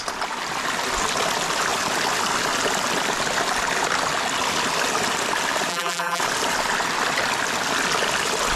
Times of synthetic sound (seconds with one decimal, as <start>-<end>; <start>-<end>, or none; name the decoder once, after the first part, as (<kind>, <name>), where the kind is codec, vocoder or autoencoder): 5.7-6.2 (vocoder, BigVGAN v2)